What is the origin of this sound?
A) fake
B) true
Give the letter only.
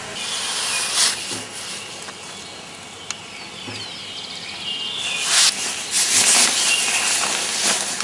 B